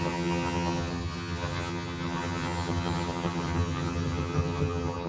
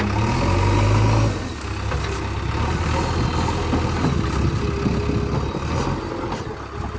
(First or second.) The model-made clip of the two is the first